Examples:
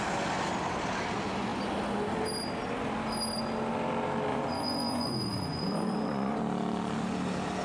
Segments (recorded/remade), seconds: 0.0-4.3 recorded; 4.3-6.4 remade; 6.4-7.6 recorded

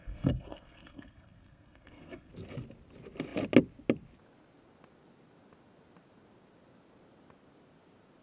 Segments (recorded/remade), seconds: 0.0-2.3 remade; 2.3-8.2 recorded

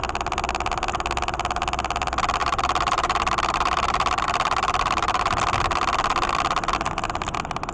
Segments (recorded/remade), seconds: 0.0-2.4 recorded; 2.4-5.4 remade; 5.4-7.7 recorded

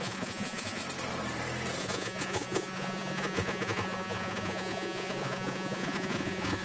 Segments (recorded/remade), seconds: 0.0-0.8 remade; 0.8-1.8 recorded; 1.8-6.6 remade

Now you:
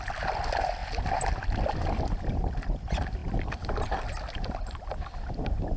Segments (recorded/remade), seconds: 0.0-5.8 recorded

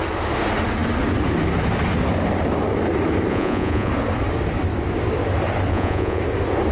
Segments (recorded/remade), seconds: 0.0-3.3 recorded; 3.3-3.9 remade; 3.9-5.7 recorded; 5.7-6.2 remade; 6.2-6.7 recorded

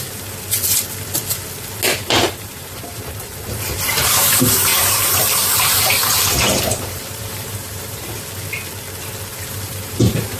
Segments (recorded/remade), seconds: 0.0-2.0 recorded; 2.0-3.0 remade; 3.0-4.7 recorded; 4.7-8.1 remade; 8.1-9.3 recorded; 9.3-10.4 remade

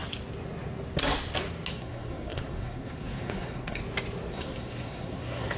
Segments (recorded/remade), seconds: 0.0-1.7 recorded; 1.7-3.8 remade; 3.8-4.3 recorded; 4.3-5.6 remade